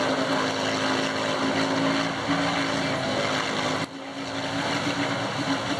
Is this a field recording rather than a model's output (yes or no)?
yes